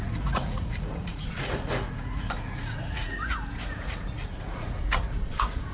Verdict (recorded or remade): remade